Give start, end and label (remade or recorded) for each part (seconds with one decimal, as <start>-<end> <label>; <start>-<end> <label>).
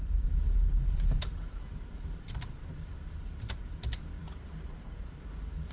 0.0-4.2 recorded; 4.2-5.2 remade; 5.2-5.7 recorded